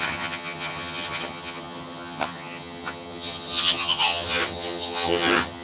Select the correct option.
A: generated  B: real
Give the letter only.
A